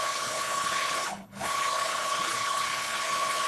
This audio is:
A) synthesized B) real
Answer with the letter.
A